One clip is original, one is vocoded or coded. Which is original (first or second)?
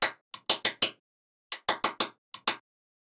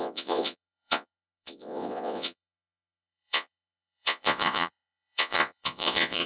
first